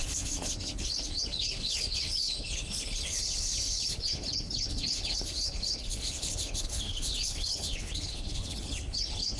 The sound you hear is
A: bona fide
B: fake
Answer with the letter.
B